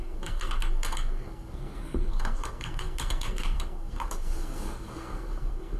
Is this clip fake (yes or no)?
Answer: yes